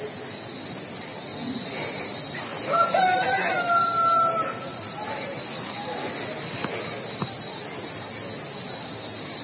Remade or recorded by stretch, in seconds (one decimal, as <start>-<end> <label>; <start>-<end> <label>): 0.0-1.3 recorded; 1.3-2.1 remade; 2.1-2.5 recorded; 2.5-3.3 remade; 3.3-9.4 recorded